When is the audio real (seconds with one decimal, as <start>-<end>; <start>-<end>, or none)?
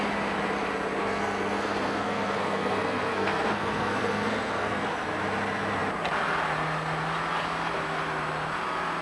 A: 0.0-1.0; 4.9-9.0